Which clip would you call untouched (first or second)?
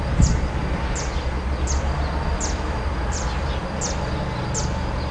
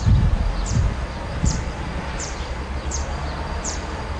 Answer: first